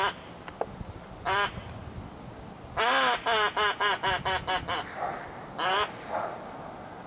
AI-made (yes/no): no